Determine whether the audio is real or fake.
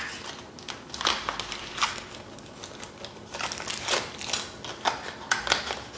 real